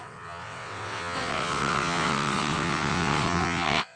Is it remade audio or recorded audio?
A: remade